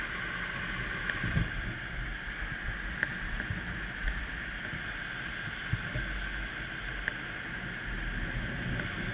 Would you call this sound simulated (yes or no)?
no